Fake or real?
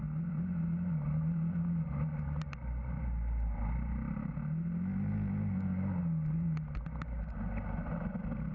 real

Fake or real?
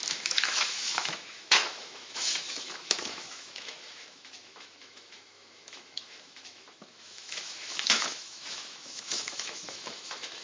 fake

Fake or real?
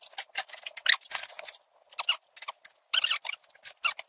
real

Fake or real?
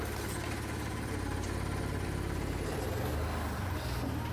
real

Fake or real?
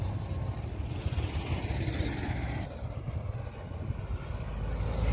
real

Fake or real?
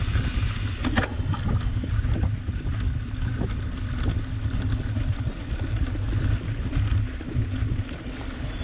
real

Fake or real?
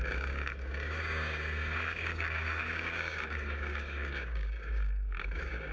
fake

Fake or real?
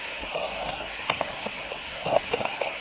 fake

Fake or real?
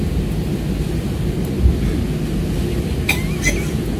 real